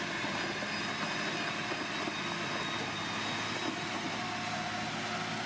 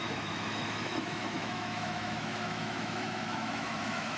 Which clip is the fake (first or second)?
second